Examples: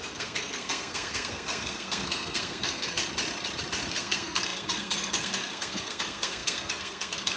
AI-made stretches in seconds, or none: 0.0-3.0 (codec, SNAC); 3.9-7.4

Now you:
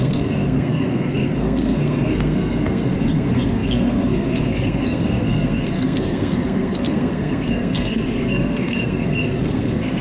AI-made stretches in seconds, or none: 0.0-10.0 (codec, SNAC)

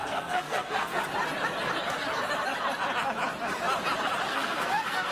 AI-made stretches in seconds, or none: 0.0-1.0 (codec, SNAC); 4.3-5.1